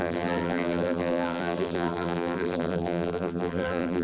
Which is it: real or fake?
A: fake